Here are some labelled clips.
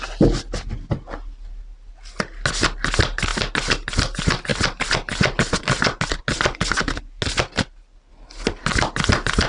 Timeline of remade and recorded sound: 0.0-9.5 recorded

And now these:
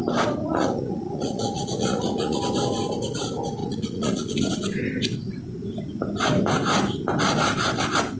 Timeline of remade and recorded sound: 0.0-0.4 recorded; 0.4-2.4 remade; 2.4-3.6 recorded; 3.6-4.5 remade; 4.5-8.2 recorded

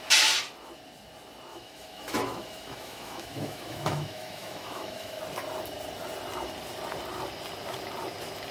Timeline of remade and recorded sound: 0.0-1.5 recorded; 1.5-5.2 remade; 5.2-8.5 recorded

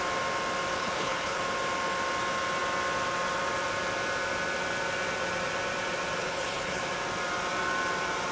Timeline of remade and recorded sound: 0.0-0.7 recorded; 0.7-1.4 remade; 1.4-6.2 recorded; 6.2-6.8 remade; 6.8-8.3 recorded

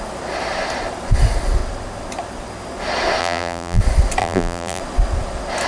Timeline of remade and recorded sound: 0.0-3.2 recorded; 3.2-3.8 remade; 3.8-4.2 recorded; 4.2-4.8 remade; 4.8-5.7 recorded

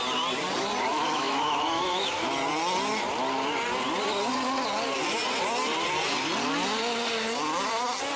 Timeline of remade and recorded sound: 0.0-0.9 recorded; 0.9-2.3 remade; 2.3-8.2 recorded

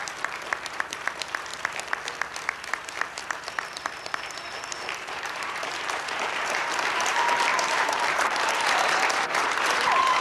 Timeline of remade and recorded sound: 0.0-1.5 remade; 1.5-2.7 recorded; 2.7-10.2 remade